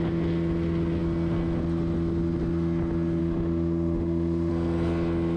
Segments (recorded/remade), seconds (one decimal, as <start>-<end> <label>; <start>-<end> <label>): 0.0-3.2 recorded; 3.2-4.5 remade; 4.5-5.4 recorded

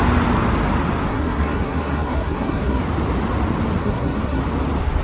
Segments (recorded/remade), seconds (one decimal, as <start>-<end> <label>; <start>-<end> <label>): 0.0-1.1 recorded; 1.1-2.8 remade; 2.8-3.8 recorded; 3.8-4.4 remade; 4.4-5.0 recorded

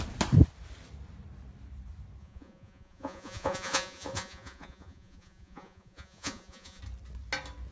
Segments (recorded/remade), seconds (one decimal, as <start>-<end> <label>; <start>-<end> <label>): 0.0-2.2 recorded; 2.2-6.8 remade; 6.8-7.7 recorded